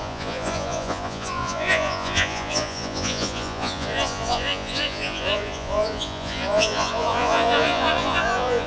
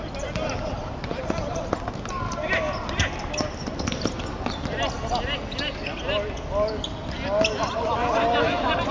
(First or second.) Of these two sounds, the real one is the second